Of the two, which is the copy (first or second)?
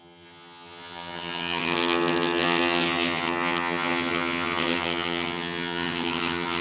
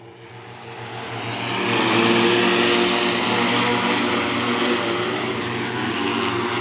first